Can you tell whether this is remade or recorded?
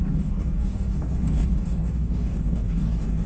remade